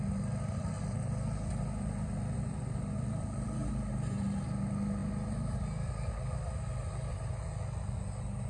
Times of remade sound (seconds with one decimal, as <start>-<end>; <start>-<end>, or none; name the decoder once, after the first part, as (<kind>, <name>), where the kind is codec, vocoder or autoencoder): none